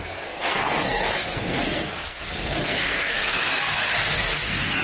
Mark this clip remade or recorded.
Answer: remade